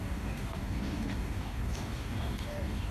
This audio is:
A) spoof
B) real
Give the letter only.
A